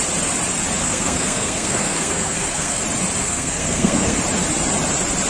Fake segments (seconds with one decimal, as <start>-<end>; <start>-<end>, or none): 0.8-2.8; 3.2-4.2